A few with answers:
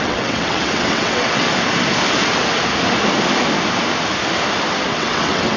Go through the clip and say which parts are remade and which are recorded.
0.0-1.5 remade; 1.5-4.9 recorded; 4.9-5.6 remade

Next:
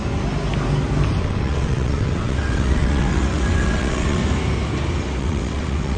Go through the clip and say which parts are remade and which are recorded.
0.0-1.2 recorded; 1.2-4.2 remade; 4.2-5.2 recorded; 5.2-6.0 remade

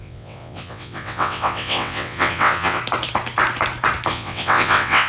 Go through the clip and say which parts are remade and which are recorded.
0.0-2.8 remade; 2.8-4.1 recorded; 4.1-5.1 remade

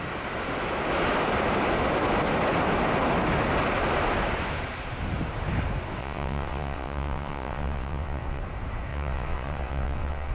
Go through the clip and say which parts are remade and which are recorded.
0.0-6.0 recorded; 6.0-8.4 remade; 8.4-8.9 recorded; 8.9-10.3 remade

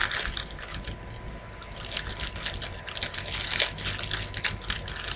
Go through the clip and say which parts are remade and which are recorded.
0.0-5.2 recorded

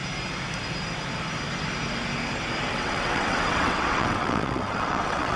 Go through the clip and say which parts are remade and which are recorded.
0.0-2.7 recorded; 2.7-5.4 remade

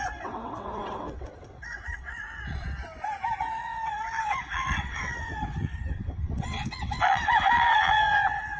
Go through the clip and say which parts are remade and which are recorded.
0.0-2.8 remade; 2.8-3.4 recorded; 3.4-8.6 remade